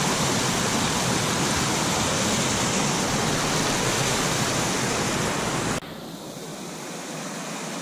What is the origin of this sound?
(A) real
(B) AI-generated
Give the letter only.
A